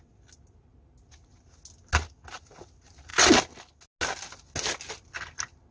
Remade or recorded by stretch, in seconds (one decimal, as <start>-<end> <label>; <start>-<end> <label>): 0.0-5.7 recorded